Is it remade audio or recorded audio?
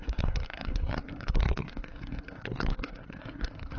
remade